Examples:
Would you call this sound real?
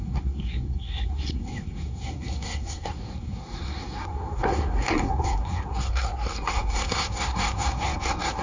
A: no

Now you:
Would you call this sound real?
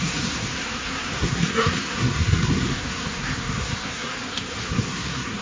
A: no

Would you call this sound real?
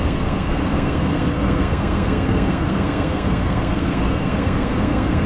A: no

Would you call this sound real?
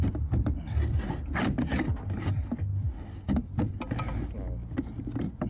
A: yes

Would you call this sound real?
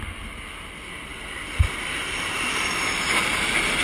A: yes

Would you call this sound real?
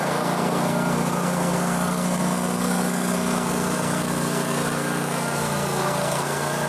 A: no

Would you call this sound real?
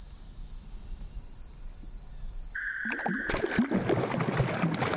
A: yes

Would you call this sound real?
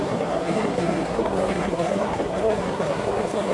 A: no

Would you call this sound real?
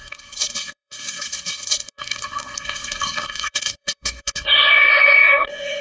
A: no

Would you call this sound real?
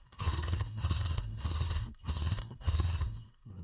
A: no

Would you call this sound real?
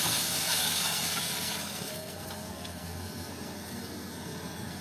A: no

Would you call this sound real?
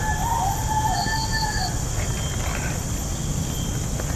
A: yes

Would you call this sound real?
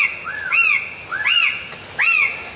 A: yes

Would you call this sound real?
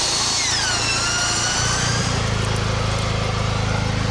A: yes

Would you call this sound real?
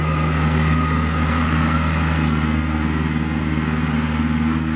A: no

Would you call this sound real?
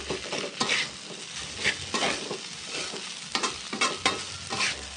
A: yes